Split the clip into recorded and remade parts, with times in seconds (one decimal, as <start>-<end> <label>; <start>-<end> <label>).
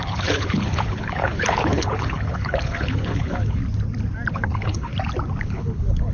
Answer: 0.0-3.6 remade; 3.6-4.3 recorded; 4.3-4.9 remade; 4.9-5.4 recorded; 5.4-6.1 remade